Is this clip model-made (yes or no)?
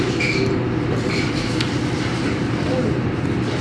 yes